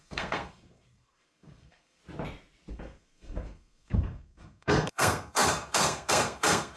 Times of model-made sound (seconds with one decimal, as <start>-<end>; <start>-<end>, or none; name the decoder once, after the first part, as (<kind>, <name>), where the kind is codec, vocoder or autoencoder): 0.0-2.0 (codec, SNAC); 2.7-6.8